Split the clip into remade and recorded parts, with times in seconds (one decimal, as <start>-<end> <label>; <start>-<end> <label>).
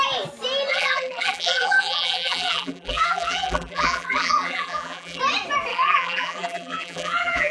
0.0-0.7 recorded; 0.7-5.2 remade; 5.2-5.7 recorded; 5.7-7.5 remade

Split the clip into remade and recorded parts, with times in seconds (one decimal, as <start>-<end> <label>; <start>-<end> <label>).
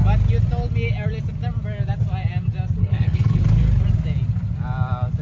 0.0-2.8 recorded; 2.8-3.4 remade; 3.4-5.2 recorded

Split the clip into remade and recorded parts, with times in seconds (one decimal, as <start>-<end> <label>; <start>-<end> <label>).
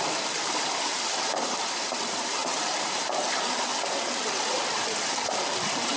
0.0-3.7 remade; 3.7-4.7 recorded; 4.7-6.0 remade